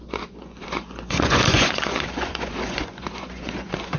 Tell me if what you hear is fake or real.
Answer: fake